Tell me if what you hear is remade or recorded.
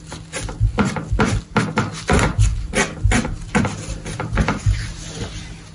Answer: recorded